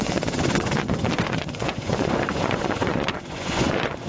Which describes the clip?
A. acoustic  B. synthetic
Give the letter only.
B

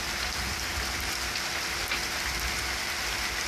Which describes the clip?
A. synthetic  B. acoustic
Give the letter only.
B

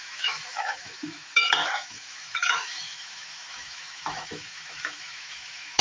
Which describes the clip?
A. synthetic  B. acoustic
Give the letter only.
A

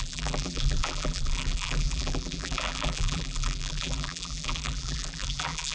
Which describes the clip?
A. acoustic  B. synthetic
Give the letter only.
B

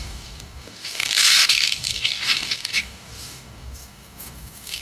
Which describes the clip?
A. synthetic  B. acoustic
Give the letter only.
A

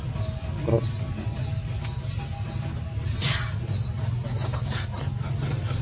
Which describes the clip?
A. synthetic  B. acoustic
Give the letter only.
B